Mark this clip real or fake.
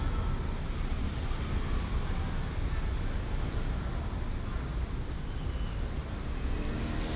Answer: real